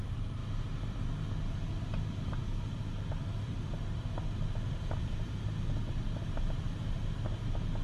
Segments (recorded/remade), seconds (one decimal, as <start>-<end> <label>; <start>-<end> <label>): 0.0-7.8 recorded